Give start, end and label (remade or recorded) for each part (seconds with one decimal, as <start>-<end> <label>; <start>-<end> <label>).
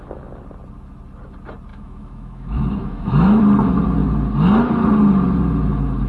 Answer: 0.0-1.7 recorded; 1.7-3.4 remade; 3.4-6.1 recorded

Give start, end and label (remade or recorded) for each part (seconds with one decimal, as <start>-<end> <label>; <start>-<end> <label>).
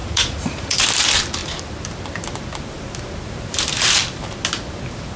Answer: 0.0-0.8 remade; 0.8-5.2 recorded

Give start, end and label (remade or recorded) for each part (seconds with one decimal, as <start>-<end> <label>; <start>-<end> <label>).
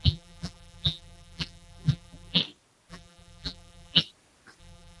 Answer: 0.0-2.4 remade; 2.4-2.9 recorded; 2.9-4.0 remade; 4.0-4.6 recorded; 4.6-5.0 remade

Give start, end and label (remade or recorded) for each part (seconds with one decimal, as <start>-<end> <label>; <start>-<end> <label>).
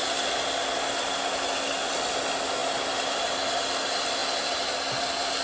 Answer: 0.0-5.4 recorded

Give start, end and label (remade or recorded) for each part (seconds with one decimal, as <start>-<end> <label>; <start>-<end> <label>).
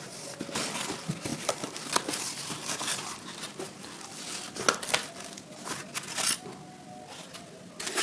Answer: 0.0-1.3 recorded; 1.3-1.8 remade; 1.8-8.0 recorded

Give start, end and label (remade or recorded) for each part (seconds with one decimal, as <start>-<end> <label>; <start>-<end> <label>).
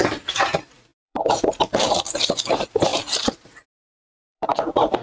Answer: 0.0-5.0 remade